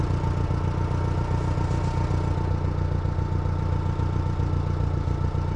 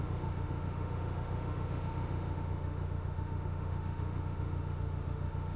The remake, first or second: second